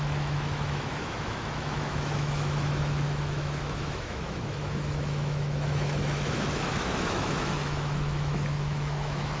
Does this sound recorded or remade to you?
remade